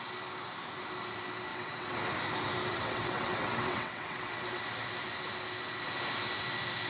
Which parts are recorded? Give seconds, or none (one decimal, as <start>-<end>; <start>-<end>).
0.0-1.5; 2.0-2.7; 4.6-6.9